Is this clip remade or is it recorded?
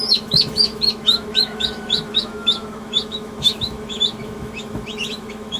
remade